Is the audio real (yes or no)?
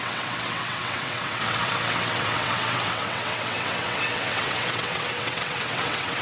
no